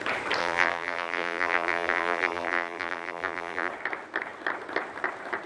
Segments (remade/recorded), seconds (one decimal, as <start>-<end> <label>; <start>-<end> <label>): 0.0-0.4 recorded; 0.4-3.7 remade; 3.7-5.5 recorded